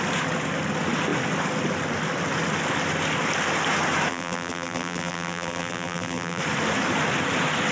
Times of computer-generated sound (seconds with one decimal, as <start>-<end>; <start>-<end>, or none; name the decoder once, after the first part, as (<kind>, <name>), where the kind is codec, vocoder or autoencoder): 4.1-6.4 (vocoder, BigVGAN v2)